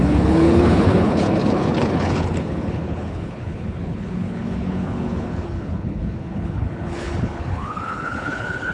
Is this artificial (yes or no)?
yes